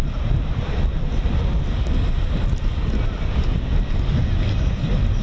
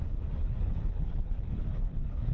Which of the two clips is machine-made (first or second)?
second